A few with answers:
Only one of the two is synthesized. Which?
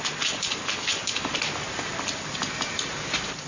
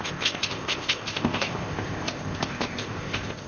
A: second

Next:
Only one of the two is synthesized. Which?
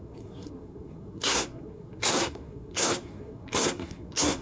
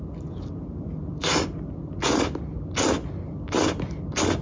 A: first